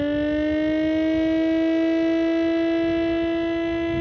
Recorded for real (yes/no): yes